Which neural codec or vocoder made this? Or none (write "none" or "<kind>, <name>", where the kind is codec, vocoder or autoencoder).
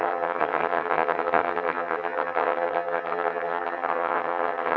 vocoder, HiFi-GAN